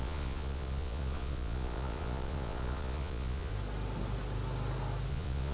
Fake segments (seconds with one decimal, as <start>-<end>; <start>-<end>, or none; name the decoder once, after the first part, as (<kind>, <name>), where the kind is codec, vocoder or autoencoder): 0.0-3.5 (vocoder, Vocos); 5.1-5.5